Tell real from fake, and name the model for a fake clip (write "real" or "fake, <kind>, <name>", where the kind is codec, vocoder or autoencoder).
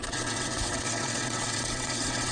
fake, vocoder, WaveNeXt